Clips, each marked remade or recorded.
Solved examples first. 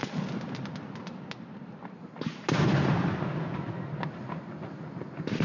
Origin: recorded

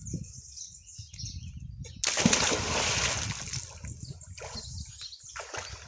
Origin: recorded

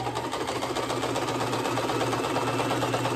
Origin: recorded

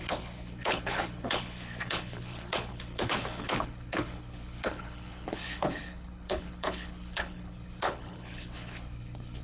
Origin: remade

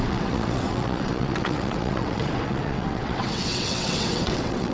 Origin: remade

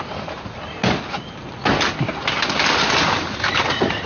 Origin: recorded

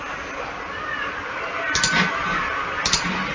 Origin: recorded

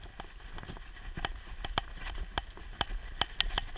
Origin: recorded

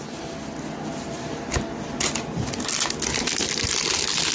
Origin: recorded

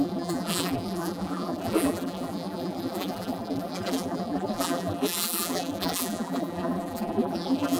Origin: remade